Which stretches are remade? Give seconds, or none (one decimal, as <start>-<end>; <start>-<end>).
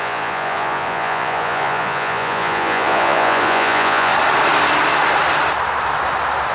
0.0-4.1